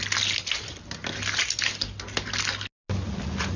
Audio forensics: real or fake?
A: real